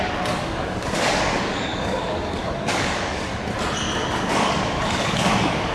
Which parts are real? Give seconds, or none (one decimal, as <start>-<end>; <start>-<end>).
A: 3.3-4.3